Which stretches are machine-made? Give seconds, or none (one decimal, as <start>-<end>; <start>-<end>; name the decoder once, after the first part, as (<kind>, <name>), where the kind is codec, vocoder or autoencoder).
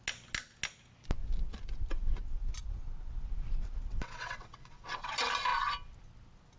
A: 3.9-5.1 (vocoder, WaveNeXt)